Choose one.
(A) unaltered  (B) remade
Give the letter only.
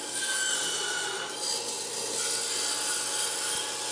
A